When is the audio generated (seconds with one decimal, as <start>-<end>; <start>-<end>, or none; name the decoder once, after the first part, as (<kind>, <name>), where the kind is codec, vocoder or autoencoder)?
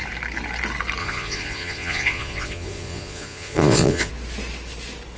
1.0-4.1 (vocoder, Vocos)